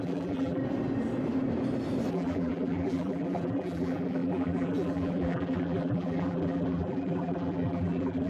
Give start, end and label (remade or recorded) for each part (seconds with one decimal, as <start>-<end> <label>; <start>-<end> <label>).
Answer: 0.0-0.6 remade; 0.6-2.1 recorded; 2.1-8.3 remade